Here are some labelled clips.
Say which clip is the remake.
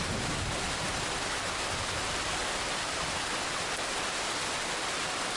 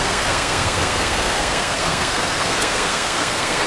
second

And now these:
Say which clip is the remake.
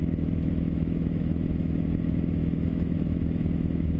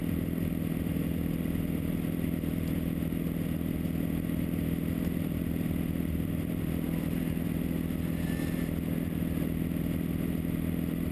first